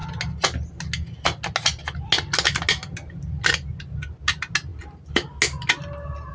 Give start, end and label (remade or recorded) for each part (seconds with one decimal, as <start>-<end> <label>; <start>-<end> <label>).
0.0-6.3 recorded